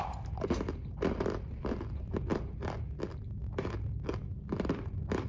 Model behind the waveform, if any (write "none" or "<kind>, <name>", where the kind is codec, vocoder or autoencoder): none